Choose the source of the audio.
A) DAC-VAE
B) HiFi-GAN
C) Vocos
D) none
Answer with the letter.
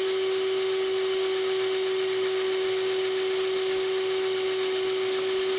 D